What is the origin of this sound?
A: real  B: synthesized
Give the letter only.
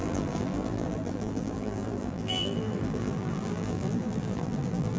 B